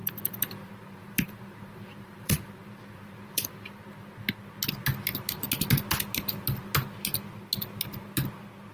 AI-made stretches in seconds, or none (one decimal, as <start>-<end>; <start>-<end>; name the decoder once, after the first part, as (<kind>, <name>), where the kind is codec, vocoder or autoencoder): 0.0-3.8 (vocoder, BigVGAN v2)